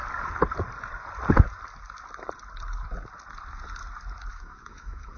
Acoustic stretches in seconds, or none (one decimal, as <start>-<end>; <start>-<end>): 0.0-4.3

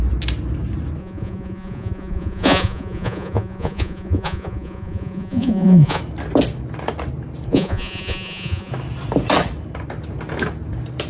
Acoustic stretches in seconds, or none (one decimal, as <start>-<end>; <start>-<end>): 0.0-1.0; 6.0-7.5; 8.7-11.1

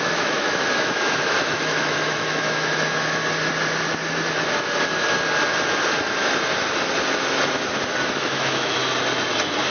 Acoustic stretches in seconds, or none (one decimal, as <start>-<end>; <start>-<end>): 3.2-8.2; 8.8-9.7

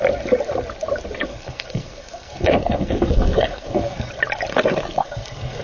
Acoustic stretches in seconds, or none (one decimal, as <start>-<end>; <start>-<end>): 0.0-1.3; 4.1-4.5

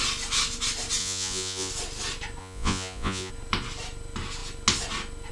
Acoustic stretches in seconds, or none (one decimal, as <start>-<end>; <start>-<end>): 0.0-1.0; 1.7-2.4; 3.3-5.3

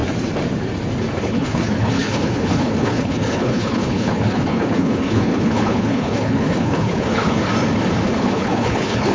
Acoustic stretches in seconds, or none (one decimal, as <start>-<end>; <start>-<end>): 0.0-1.2; 7.5-8.1